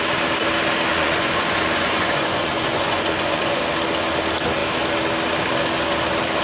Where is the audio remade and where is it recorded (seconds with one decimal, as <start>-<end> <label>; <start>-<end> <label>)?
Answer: 0.0-0.9 recorded; 0.9-3.6 remade; 3.6-6.4 recorded